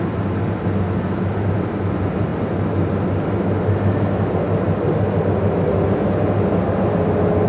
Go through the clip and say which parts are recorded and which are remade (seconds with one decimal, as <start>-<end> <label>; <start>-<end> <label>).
0.0-7.5 recorded